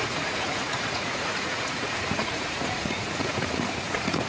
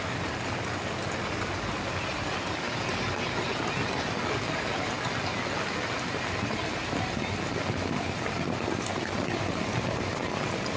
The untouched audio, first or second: second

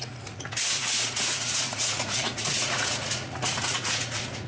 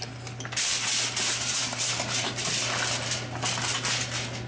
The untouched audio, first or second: second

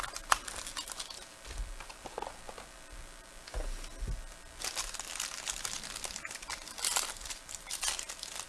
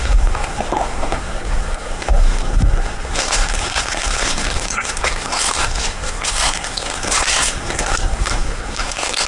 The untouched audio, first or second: first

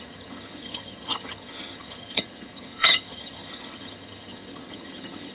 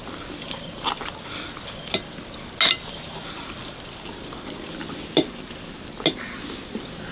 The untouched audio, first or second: second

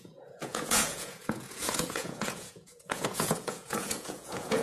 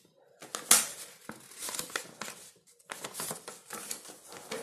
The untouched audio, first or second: second